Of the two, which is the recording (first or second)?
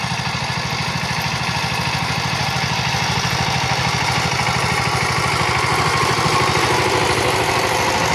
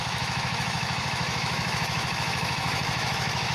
first